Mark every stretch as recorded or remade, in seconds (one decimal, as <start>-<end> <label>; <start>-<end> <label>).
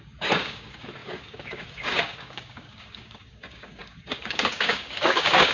0.0-5.5 remade